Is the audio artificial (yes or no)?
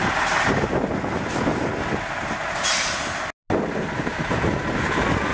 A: no